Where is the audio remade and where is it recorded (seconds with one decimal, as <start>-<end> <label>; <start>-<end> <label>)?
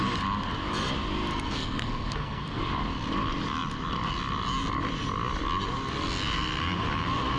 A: 0.0-1.3 recorded; 1.3-2.6 remade; 2.6-7.4 recorded